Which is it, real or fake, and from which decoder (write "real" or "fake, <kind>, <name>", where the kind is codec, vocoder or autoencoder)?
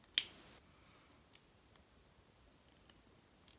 real